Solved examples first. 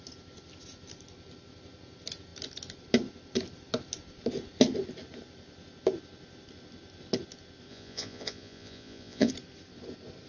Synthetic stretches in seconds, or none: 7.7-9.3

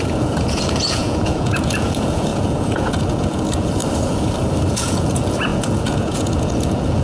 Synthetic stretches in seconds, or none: 0.0-3.8; 4.7-7.0

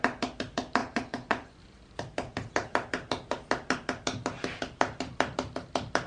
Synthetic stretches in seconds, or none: 0.8-1.6

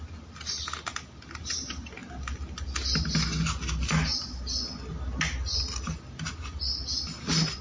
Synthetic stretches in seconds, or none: none

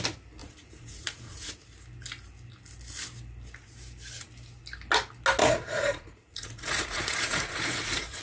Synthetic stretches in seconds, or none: 0.4-1.5; 5.4-8.2

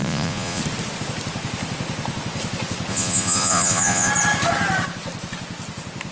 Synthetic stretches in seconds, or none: 0.0-0.6; 2.9-4.1